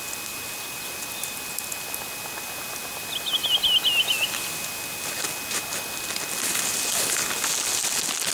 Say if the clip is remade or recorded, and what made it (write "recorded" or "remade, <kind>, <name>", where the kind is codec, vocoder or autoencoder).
recorded